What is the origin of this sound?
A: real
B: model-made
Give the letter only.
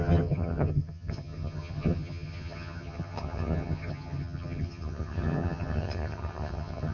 B